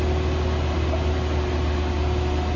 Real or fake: real